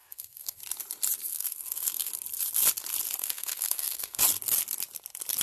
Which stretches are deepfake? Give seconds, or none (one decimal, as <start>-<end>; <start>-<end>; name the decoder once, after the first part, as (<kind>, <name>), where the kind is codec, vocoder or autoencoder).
0.0-0.6 (codec, SNAC); 1.3-2.1; 3.2-4.2